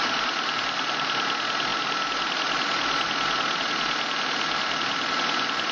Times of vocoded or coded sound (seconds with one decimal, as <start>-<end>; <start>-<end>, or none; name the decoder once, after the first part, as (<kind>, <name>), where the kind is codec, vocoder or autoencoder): none